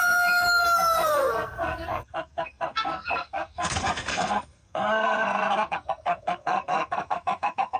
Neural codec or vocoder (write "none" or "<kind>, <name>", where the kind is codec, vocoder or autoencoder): codec, SNAC